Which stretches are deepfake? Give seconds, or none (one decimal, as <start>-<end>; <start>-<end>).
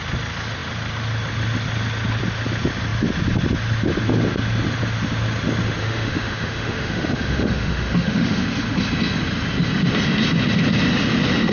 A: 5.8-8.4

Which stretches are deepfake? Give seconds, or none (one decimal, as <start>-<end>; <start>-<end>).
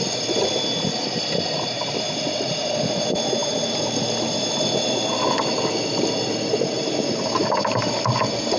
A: none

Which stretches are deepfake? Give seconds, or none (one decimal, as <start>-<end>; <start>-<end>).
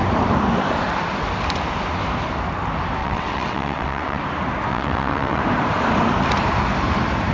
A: 3.0-4.2; 4.7-5.4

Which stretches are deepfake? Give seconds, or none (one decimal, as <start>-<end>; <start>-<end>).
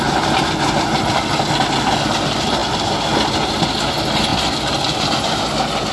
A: none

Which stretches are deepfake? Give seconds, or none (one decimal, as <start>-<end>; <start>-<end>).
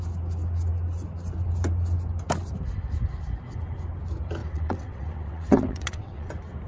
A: 4.4-6.3